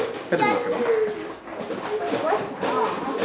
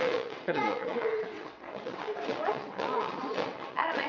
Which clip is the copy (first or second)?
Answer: second